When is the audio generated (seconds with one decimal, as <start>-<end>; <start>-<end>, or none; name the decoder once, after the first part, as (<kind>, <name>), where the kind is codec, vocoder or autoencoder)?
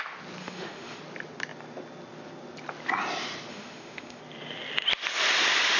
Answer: 0.4-1.0 (autoencoder, DAC-VAE); 3.5-4.2